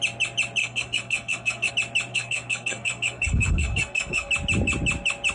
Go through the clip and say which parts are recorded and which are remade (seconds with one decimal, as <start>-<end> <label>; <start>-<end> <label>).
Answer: 0.0-0.6 recorded; 0.6-1.7 remade; 1.7-2.1 recorded; 2.1-4.3 remade; 4.3-5.3 recorded